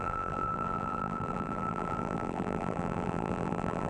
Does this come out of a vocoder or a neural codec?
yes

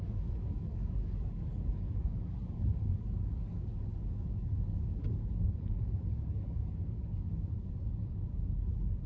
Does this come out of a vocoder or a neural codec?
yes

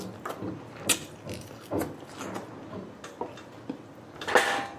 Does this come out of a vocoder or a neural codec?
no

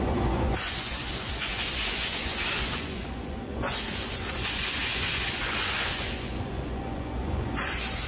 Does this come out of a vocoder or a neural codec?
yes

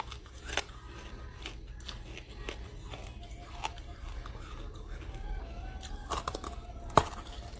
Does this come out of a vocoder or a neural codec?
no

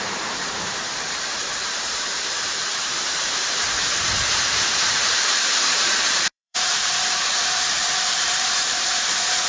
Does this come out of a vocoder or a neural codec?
yes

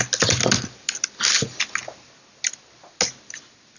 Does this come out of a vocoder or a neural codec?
no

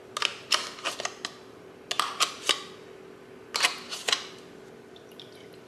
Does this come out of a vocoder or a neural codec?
no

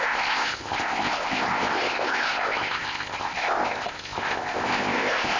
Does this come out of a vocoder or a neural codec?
yes